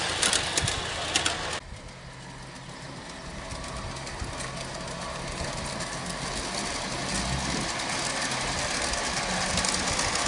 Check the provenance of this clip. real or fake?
real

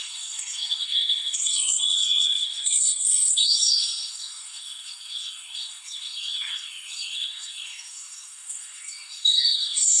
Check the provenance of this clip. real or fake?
fake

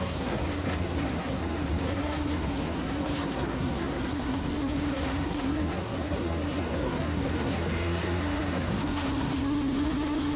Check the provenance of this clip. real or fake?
fake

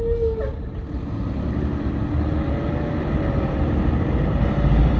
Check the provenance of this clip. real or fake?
real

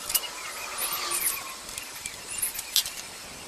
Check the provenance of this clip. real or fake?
real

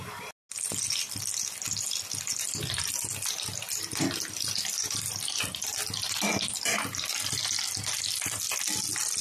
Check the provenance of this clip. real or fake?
real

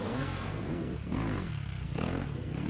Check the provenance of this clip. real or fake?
fake